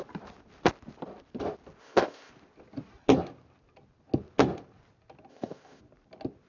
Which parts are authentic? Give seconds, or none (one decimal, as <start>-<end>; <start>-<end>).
0.0-1.8; 2.3-5.3; 5.8-6.5